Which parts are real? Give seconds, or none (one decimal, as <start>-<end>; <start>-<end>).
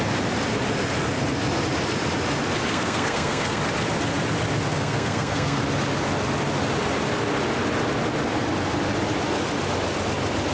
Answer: 0.0-2.7; 3.6-4.7; 5.6-10.5